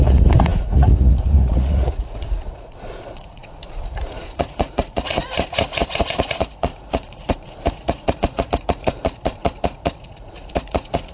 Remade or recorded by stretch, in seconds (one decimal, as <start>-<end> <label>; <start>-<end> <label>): 0.0-11.1 remade